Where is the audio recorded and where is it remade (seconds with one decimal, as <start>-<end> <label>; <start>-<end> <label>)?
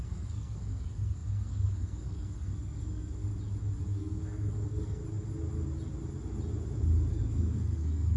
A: 0.0-3.3 remade; 3.3-3.8 recorded; 3.8-5.0 remade; 5.0-7.1 recorded; 7.1-8.2 remade